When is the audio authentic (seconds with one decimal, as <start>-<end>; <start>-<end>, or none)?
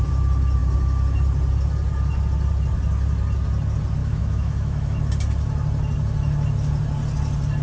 0.0-4.0; 5.0-7.6